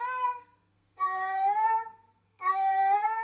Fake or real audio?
fake